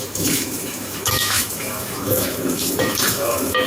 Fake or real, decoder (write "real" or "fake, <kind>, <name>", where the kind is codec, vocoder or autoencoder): fake, autoencoder, DAC-VAE